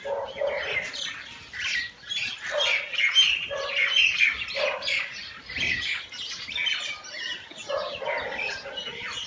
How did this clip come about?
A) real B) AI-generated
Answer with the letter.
A